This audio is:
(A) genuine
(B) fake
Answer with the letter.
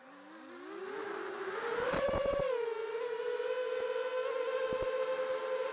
A